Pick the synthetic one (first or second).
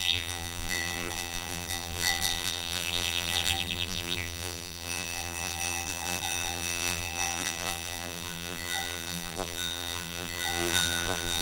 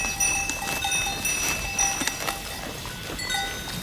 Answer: first